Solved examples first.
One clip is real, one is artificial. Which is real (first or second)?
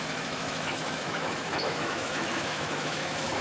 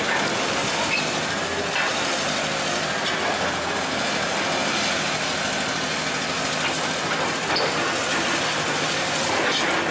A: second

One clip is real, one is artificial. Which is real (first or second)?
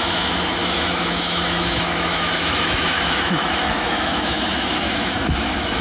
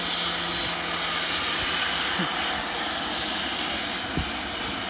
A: second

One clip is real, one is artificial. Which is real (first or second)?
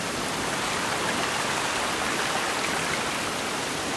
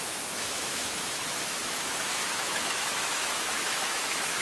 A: first